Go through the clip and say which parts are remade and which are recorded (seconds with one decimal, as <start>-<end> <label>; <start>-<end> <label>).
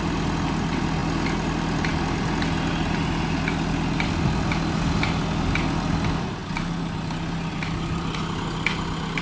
0.0-9.2 recorded